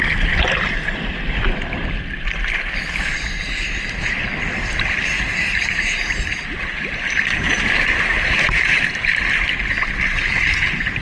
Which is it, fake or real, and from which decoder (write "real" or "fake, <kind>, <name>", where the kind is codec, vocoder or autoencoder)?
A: real